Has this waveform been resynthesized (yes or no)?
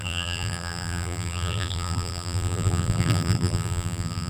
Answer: yes